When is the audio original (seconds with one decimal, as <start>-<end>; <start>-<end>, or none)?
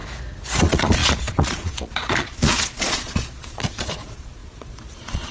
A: 0.0-0.6